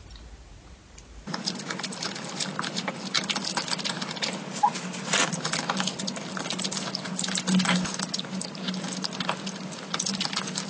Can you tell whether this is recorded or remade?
recorded